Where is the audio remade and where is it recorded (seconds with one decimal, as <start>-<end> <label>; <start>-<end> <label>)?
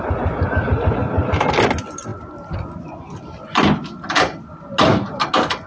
0.0-5.7 recorded